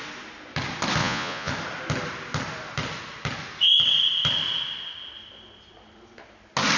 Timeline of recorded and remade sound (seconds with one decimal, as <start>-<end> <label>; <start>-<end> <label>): 0.0-1.0 recorded; 1.0-1.5 remade; 1.5-6.8 recorded